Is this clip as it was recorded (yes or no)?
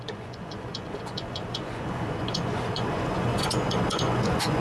no